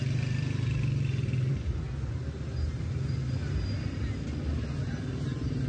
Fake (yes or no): no